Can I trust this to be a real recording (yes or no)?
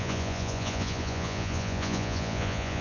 no